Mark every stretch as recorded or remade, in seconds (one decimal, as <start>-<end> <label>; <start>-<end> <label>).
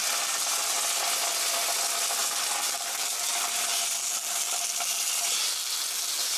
0.0-6.4 recorded